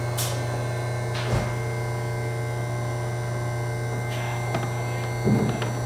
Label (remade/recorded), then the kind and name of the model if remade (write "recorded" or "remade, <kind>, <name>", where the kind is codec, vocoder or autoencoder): recorded